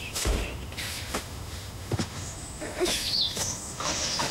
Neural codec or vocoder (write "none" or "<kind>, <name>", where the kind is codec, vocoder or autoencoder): autoencoder, DAC-VAE